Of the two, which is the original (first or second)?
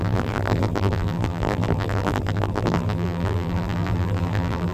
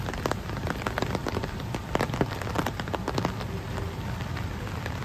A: second